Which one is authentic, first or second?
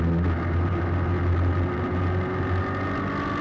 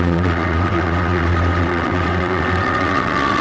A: first